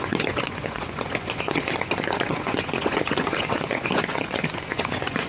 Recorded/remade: remade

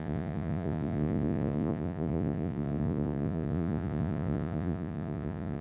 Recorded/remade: remade